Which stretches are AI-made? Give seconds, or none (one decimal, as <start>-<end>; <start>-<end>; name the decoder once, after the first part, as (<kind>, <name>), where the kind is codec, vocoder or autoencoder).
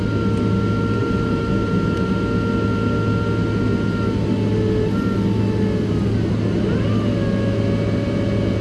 1.0-2.1 (vocoder, BigVGAN v2)